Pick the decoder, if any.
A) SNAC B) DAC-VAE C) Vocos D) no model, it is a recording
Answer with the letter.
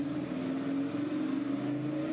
D